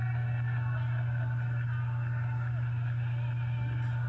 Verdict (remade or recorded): recorded